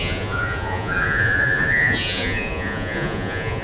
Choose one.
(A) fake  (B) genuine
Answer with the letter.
A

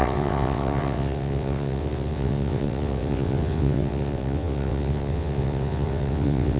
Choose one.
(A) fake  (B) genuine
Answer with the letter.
A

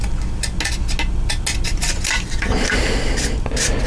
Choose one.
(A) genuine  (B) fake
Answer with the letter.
A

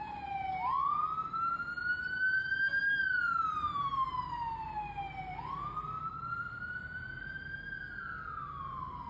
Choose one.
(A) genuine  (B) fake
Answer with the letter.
A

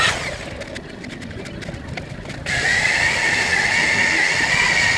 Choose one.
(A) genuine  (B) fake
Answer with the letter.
A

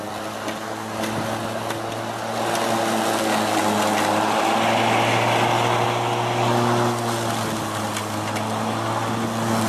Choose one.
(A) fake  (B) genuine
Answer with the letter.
B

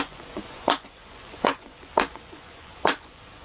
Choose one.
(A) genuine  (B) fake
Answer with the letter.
B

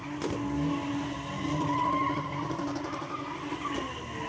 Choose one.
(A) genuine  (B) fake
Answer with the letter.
A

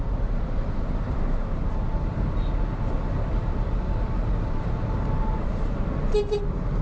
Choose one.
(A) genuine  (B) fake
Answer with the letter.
A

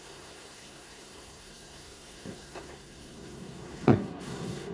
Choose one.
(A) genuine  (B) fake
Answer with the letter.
B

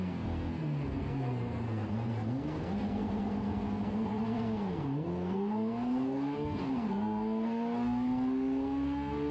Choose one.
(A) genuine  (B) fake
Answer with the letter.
B